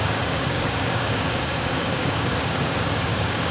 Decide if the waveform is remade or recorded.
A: remade